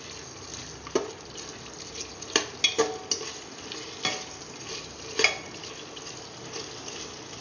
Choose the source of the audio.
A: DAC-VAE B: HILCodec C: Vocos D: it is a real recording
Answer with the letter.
D